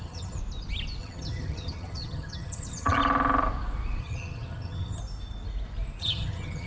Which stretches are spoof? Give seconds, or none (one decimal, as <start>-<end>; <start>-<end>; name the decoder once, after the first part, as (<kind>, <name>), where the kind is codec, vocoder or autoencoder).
0.0-0.4 (vocoder, HiFi-GAN); 1.0-3.0; 4.0-5.0; 6.0-6.7